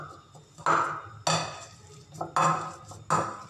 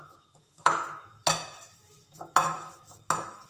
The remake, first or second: second